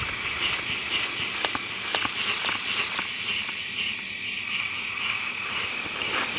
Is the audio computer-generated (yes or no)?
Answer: no